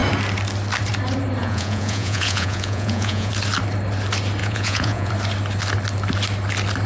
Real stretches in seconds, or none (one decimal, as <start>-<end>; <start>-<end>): 0.0-1.4; 3.3-4.4; 5.1-6.9